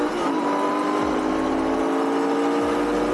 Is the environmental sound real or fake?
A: real